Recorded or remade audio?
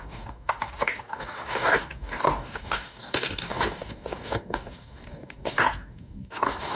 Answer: remade